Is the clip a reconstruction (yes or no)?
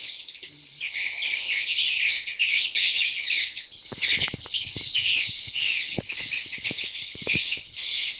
yes